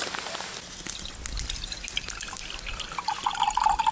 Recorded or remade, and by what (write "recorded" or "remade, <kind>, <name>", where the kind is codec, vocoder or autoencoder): recorded